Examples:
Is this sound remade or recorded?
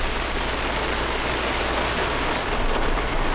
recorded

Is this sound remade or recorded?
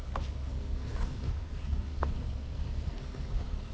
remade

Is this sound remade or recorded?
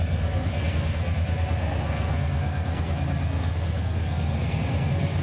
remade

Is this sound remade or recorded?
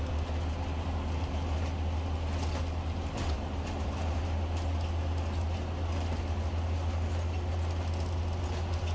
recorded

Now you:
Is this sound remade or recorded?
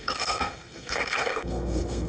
remade